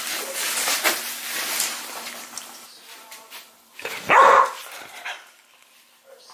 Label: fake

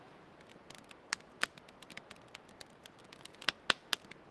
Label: real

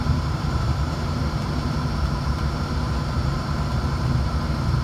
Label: fake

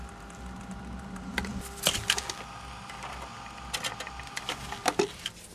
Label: real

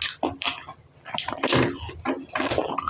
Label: real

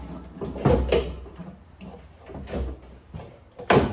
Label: real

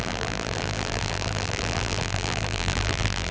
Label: fake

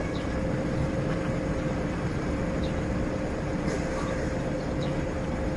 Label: fake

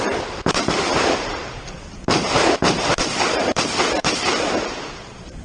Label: fake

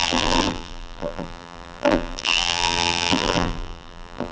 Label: fake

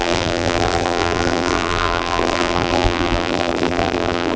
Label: fake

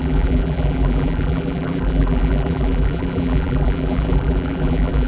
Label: fake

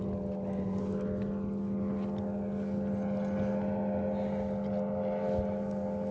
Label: real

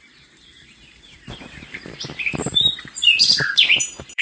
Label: fake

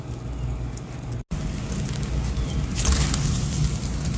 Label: real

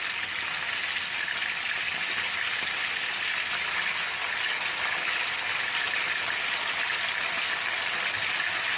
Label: real